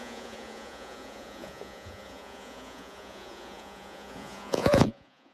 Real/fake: fake